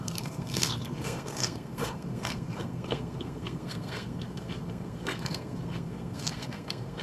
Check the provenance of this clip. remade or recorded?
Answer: remade